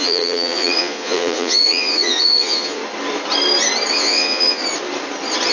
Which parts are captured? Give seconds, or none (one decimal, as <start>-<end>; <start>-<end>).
2.8-3.9; 4.6-5.5